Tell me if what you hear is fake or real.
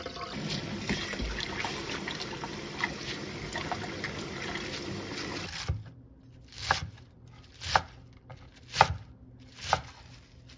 real